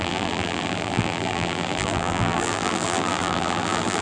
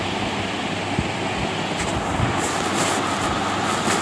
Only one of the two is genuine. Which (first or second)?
second